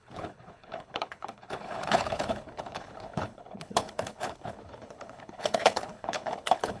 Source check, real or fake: fake